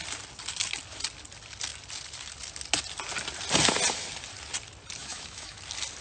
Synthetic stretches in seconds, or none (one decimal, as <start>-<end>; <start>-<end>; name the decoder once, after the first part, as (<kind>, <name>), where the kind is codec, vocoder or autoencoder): 5.0-5.6 (autoencoder, DAC-VAE)